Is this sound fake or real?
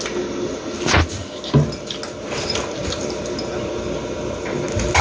real